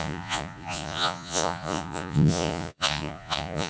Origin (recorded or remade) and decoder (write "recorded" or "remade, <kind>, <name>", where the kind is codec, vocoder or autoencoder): remade, vocoder, Vocos